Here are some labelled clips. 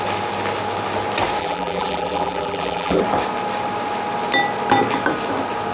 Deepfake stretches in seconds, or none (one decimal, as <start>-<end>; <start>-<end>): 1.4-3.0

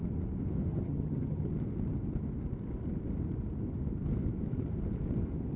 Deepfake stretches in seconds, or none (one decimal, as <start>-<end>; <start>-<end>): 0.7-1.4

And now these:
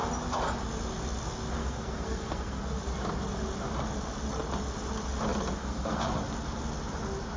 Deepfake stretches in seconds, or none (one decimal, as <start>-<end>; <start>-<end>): 1.6-2.8; 5.6-6.1

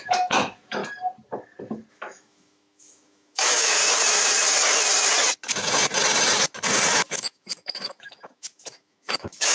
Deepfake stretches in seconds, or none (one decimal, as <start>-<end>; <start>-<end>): 0.0-0.8; 1.9-3.8; 7.0-9.5

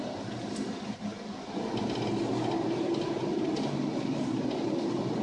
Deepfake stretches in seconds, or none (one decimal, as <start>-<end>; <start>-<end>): none